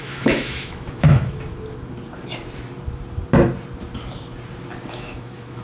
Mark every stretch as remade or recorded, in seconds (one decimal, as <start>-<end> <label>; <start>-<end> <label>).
0.0-1.5 remade; 1.5-4.9 recorded; 4.9-5.6 remade